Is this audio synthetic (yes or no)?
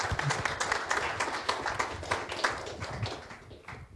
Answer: no